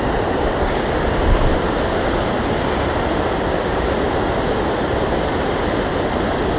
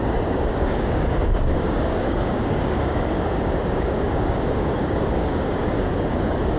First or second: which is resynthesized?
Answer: second